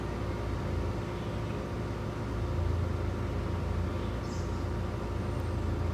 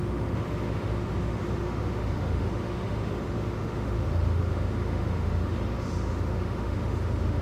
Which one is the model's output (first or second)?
second